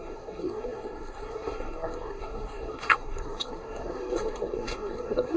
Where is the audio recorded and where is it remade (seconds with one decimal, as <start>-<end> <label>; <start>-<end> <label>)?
0.0-5.4 remade